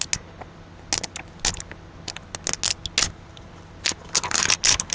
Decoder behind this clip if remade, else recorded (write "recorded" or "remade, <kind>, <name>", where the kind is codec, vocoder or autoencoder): recorded